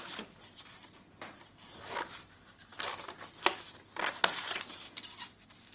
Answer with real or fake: real